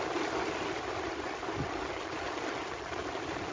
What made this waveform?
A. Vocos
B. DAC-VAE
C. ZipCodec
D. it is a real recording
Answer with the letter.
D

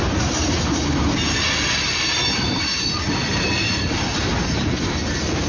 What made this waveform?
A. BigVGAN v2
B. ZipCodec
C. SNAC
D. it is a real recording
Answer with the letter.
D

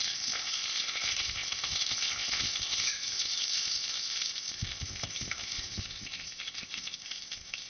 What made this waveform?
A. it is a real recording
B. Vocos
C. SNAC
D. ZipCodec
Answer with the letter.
D